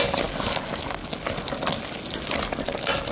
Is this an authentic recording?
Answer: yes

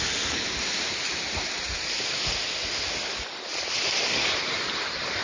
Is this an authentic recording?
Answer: yes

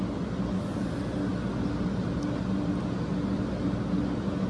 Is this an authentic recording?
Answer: yes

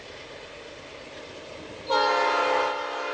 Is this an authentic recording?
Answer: yes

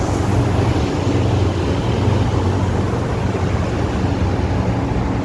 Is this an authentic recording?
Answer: yes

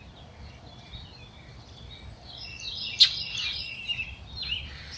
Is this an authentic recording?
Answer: yes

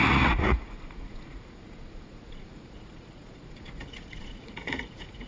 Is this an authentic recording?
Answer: no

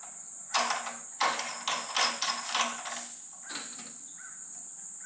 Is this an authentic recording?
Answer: yes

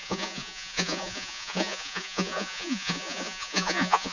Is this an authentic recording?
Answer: no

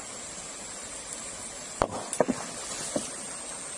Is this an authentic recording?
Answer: yes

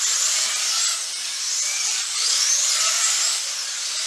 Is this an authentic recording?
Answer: yes